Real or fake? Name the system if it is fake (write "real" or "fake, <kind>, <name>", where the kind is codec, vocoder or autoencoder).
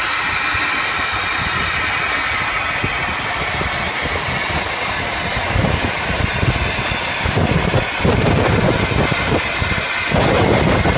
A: real